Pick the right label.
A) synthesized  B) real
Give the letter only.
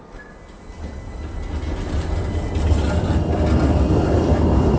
B